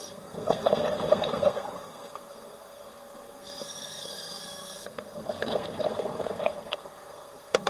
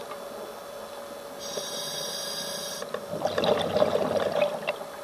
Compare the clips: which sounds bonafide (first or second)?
second